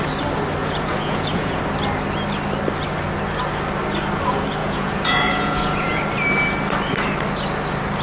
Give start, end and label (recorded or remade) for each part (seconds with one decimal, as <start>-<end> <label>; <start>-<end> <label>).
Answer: 0.0-0.6 recorded; 0.6-1.6 remade; 1.6-4.6 recorded; 4.6-6.0 remade; 6.0-8.0 recorded